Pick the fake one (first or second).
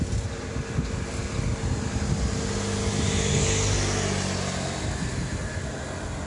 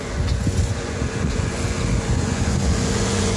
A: second